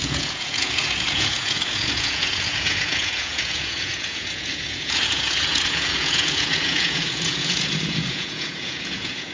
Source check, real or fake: fake